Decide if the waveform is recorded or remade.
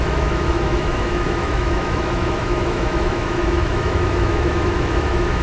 remade